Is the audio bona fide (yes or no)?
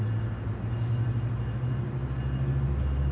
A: yes